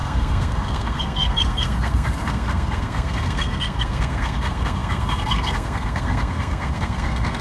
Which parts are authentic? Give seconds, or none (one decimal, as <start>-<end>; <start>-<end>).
none